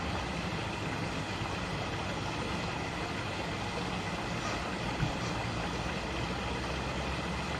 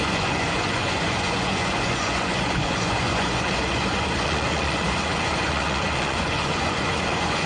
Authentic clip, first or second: first